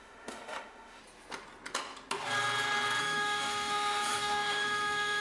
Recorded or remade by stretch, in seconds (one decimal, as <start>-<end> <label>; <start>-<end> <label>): 0.0-1.0 remade; 1.0-3.0 recorded; 3.0-5.2 remade